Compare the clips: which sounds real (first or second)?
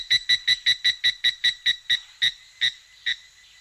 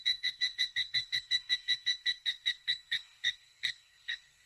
first